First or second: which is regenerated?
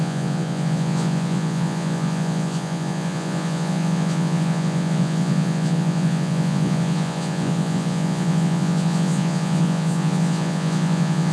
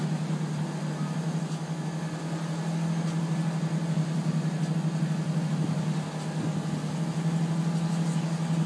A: first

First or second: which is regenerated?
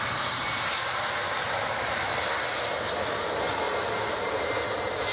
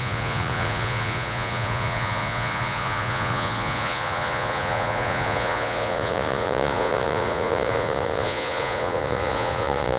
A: second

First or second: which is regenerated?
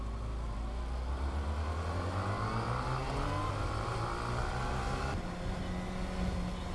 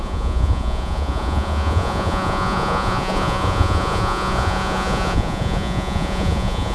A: second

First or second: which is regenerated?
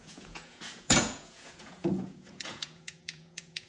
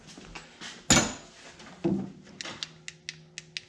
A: first